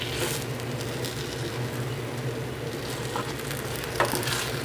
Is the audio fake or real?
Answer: real